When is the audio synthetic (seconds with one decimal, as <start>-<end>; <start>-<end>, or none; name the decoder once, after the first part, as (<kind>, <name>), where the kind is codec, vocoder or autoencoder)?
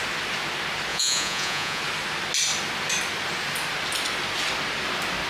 0.9-1.8 (vocoder, Vocos)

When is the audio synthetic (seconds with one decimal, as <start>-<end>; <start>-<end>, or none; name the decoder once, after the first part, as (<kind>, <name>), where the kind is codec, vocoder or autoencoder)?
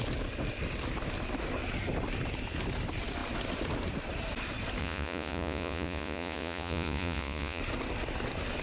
4.8-7.6 (vocoder, Vocos)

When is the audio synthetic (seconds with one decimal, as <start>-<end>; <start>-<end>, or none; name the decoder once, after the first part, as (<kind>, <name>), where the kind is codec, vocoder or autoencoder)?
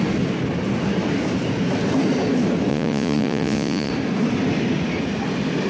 2.7-3.9 (vocoder, Vocos)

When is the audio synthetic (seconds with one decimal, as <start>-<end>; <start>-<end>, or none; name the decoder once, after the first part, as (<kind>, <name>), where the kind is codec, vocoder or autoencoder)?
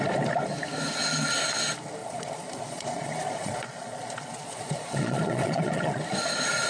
2.0-6.0 (vocoder, Vocos)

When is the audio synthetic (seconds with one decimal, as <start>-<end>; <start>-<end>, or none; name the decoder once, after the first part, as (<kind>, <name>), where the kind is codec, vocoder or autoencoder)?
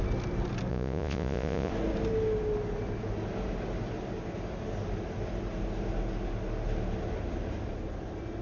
0.7-1.7 (vocoder, Vocos)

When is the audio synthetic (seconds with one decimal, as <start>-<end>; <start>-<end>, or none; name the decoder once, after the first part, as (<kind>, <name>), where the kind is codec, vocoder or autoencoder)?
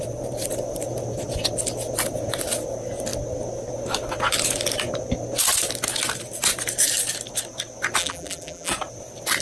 8.0-8.7 (vocoder, BigVGAN v2)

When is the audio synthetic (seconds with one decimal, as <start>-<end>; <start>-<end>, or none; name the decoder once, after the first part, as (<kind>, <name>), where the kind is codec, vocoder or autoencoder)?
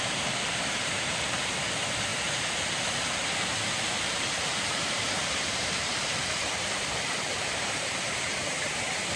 0.0-9.2 (vocoder, BigVGAN v2)